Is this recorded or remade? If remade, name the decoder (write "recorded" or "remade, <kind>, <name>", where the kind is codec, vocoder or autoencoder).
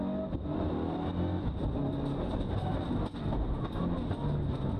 recorded